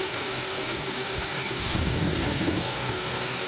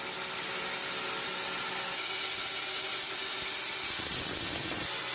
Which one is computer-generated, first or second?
first